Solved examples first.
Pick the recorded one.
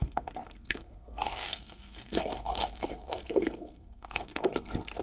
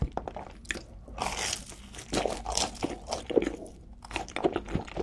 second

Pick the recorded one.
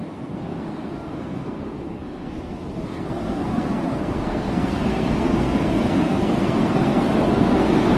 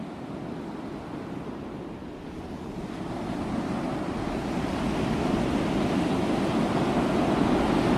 second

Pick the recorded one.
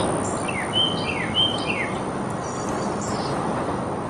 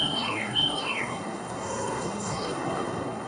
first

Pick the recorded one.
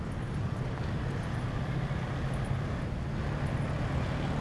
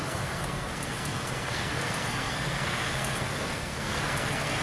first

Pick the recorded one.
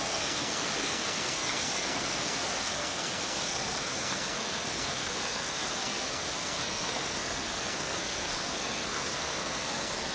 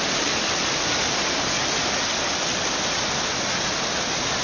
second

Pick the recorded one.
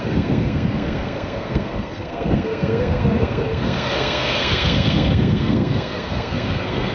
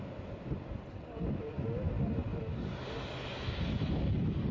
second